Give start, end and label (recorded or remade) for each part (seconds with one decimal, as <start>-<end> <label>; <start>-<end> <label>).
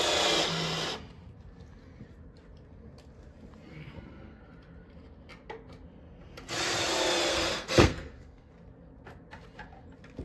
0.0-3.7 recorded; 3.7-4.4 remade; 4.4-7.3 recorded; 7.3-8.5 remade; 8.5-10.2 recorded